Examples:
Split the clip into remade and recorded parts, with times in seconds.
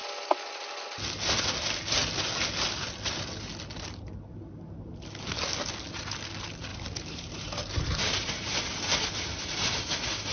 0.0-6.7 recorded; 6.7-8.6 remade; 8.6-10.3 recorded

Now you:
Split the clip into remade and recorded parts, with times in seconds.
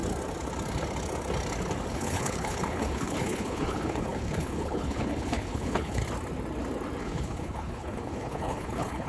0.0-1.9 recorded; 1.9-6.0 remade; 6.0-7.0 recorded; 7.0-9.1 remade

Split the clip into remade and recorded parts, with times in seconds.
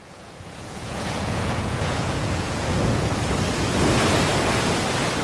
0.0-3.1 remade; 3.1-5.2 recorded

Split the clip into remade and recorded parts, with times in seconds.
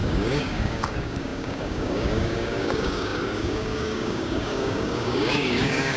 0.0-6.0 remade